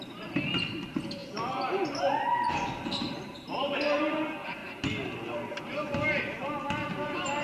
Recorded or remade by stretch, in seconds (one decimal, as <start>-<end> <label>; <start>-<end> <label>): 0.0-7.4 recorded

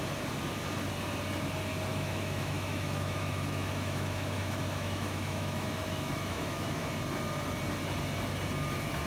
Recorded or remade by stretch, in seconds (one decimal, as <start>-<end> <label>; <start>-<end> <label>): 0.0-1.9 recorded; 1.9-6.9 remade; 6.9-9.1 recorded

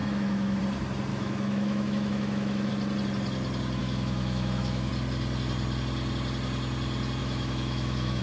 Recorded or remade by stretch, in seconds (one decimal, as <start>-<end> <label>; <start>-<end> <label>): 0.0-0.6 remade; 0.6-1.1 recorded; 1.1-2.7 remade; 2.7-3.8 recorded; 3.8-4.9 remade; 4.9-7.2 recorded; 7.2-8.2 remade

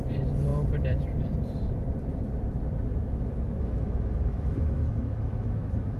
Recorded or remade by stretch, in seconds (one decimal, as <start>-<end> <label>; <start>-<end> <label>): 0.0-2.9 recorded; 2.9-6.0 remade